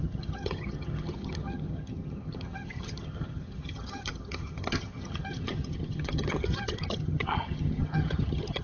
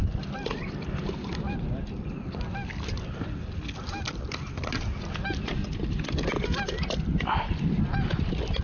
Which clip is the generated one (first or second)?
first